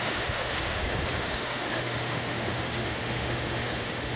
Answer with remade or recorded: remade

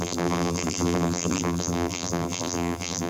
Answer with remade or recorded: remade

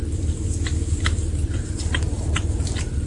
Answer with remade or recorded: recorded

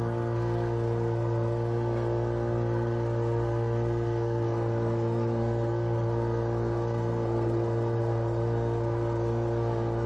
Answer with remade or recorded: remade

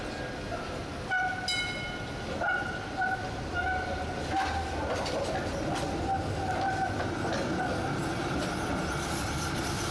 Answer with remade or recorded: recorded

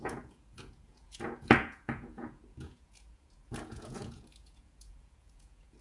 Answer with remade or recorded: remade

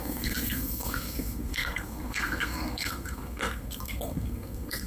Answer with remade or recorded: remade